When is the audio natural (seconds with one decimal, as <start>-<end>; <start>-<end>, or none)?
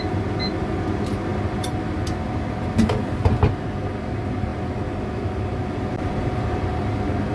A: 0.0-4.5; 6.1-7.3